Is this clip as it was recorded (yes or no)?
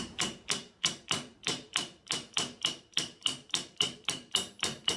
no